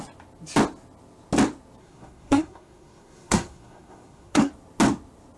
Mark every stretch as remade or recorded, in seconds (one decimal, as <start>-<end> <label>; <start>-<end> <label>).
0.0-1.8 recorded; 1.8-4.5 remade; 4.5-5.4 recorded